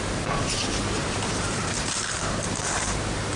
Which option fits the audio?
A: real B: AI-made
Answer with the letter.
B